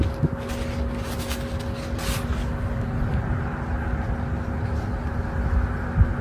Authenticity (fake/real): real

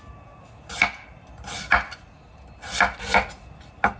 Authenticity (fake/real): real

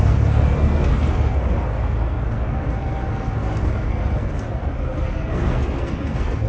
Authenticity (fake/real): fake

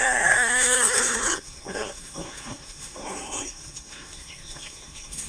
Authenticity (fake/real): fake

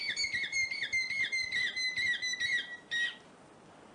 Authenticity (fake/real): real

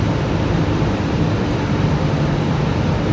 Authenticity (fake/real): fake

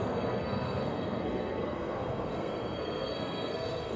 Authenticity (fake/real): fake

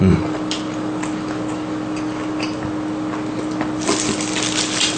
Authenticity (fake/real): real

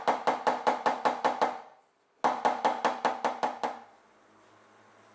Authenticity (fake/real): real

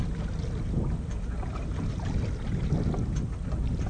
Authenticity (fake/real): real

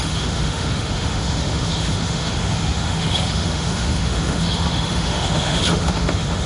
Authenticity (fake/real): fake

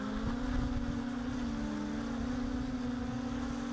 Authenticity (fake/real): real